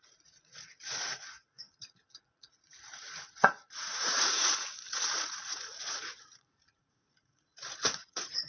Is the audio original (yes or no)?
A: no